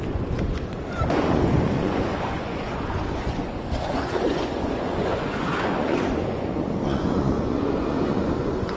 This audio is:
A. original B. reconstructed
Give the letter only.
B